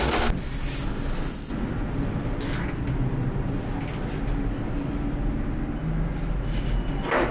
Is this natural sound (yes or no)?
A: yes